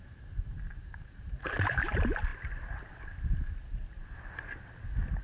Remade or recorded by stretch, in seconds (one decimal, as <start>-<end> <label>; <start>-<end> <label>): 0.0-0.8 recorded; 0.8-1.5 remade; 1.5-5.2 recorded